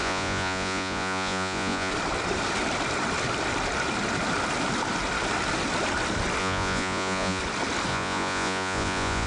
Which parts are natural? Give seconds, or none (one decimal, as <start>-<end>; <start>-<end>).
1.9-6.4; 7.4-7.9